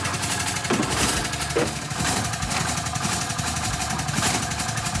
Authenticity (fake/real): real